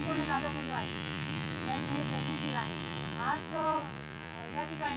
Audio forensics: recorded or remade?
remade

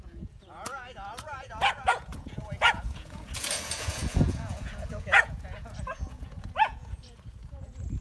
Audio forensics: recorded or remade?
remade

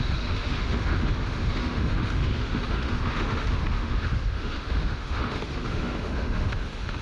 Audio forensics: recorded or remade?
remade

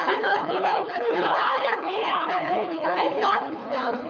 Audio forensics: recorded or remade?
remade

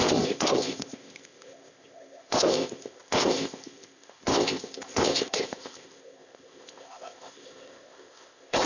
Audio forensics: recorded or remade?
remade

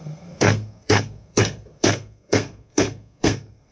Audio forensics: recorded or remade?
remade